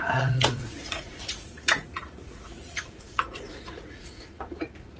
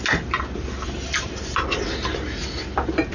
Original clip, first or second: second